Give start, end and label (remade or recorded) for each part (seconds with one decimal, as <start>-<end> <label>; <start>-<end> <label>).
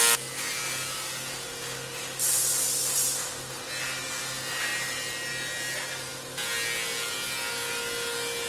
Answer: 0.0-8.5 recorded